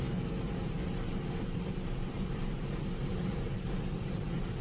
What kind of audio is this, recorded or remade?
remade